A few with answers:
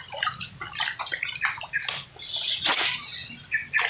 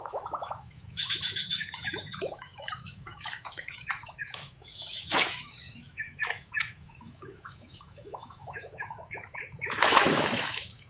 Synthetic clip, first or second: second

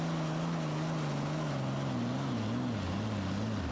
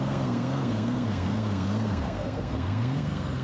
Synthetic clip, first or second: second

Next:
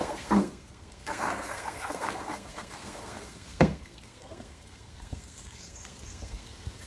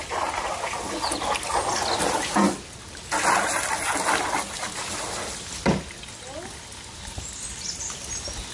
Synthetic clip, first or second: first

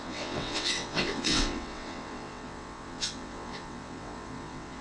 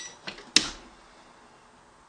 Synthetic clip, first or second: first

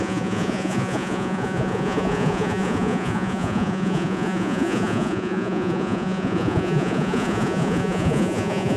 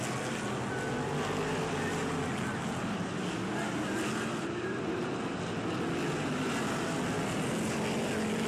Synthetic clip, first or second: first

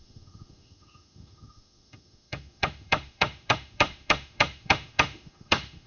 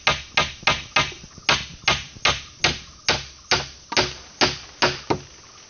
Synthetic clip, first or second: first